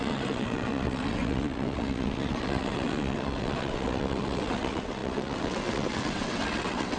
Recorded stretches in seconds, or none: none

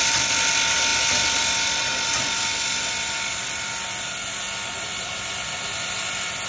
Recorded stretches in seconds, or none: 0.0-6.5

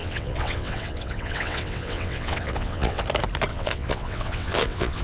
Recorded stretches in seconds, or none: 3.0-3.5

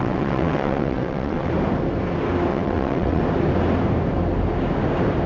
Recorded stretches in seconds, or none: 1.5-2.5; 3.2-5.3

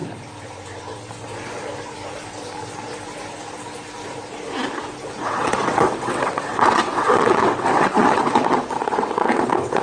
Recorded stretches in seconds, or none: 0.0-5.1